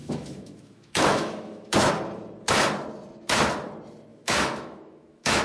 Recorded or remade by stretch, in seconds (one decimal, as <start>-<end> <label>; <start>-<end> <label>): 0.0-1.9 remade; 1.9-4.1 recorded; 4.1-5.4 remade

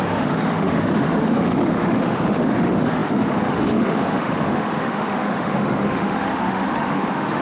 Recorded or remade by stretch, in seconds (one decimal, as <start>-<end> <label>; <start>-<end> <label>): 0.0-7.4 remade

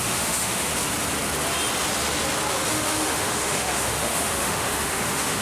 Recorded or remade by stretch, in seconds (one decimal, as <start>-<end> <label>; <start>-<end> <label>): 0.0-0.7 remade; 0.7-2.7 recorded; 2.7-5.4 remade

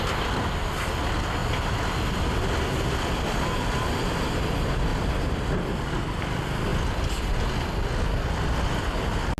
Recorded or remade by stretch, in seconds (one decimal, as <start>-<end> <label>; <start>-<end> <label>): 0.0-9.4 recorded

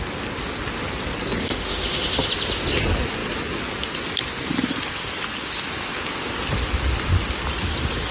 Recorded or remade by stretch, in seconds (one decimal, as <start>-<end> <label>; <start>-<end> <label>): 0.0-1.4 recorded; 1.4-2.3 remade; 2.3-8.1 recorded

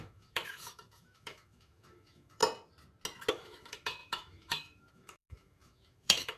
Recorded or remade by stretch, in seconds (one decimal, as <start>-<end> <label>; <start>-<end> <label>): 0.0-2.4 remade; 2.4-3.3 recorded; 3.3-6.4 remade

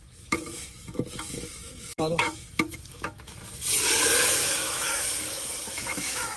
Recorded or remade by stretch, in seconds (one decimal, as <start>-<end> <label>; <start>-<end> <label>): 0.0-3.3 remade; 3.3-4.4 recorded; 4.4-6.4 remade